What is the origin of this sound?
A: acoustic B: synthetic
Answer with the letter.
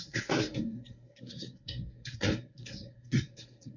B